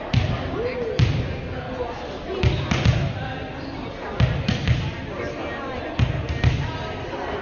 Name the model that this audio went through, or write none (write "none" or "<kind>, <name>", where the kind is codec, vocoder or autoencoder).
none